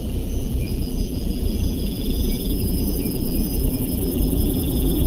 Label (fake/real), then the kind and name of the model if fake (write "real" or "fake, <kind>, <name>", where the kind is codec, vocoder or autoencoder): fake, vocoder, BigVGAN v2